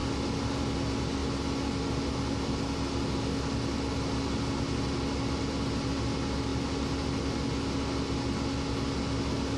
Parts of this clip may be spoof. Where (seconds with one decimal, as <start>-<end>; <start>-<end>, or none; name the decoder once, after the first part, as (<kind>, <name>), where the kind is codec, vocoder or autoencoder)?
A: none